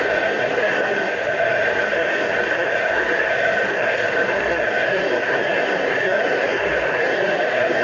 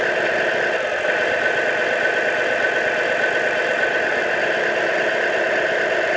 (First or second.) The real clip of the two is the second